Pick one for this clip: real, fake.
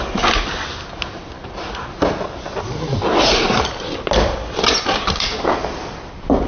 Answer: real